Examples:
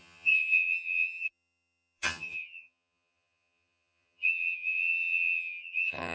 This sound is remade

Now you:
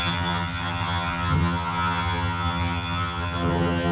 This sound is remade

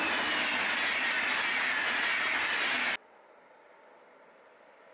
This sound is recorded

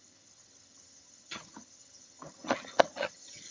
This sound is remade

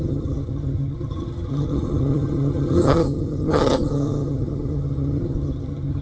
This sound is remade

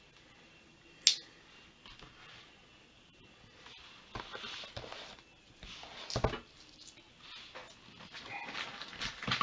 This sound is recorded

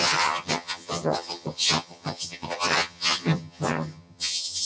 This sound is remade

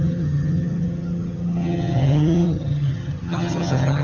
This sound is remade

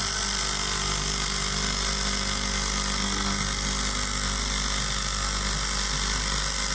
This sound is recorded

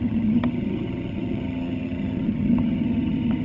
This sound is remade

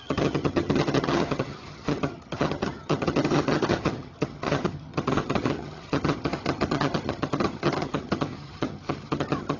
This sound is remade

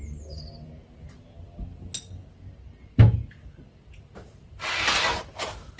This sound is recorded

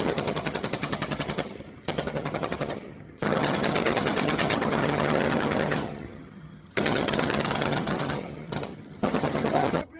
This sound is remade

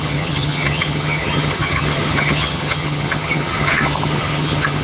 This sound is remade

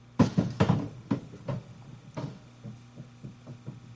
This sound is recorded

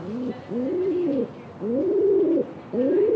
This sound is recorded